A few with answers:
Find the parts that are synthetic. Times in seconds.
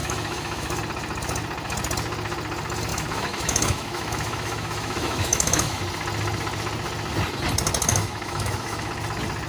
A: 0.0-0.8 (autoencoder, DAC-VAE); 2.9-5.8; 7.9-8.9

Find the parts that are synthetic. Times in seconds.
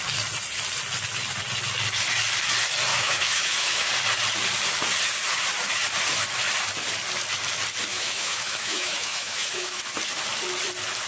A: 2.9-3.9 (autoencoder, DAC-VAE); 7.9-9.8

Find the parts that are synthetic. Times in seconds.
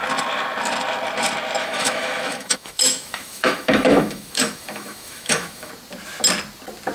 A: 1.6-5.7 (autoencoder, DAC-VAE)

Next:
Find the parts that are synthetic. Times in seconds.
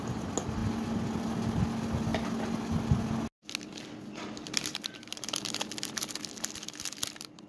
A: none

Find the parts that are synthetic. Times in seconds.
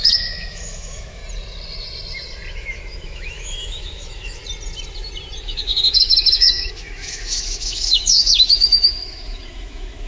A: 0.0-1.2 (autoencoder, DAC-VAE); 2.5-4.4; 5.4-10.1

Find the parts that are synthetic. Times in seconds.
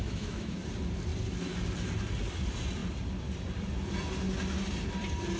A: 0.0-0.6 (autoencoder, DAC-VAE)